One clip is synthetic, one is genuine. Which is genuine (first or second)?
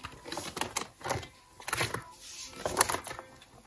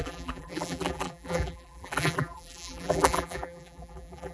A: first